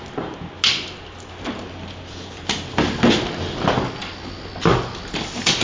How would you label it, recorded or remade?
recorded